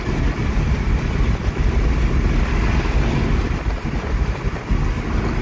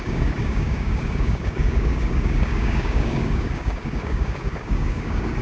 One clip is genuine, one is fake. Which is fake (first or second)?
second